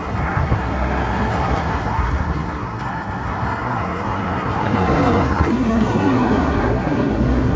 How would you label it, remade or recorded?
remade